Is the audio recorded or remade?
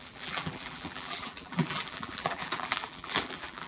remade